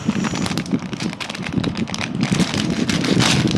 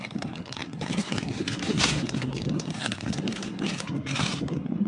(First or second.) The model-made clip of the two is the second